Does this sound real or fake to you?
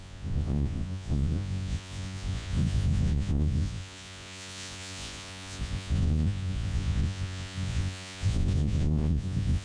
fake